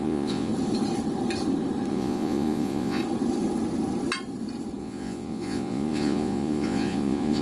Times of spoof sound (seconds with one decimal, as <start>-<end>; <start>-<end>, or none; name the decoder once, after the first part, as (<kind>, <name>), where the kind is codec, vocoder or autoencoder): 0.0-0.5 (vocoder, Vocos); 1.9-3.0; 4.8-7.4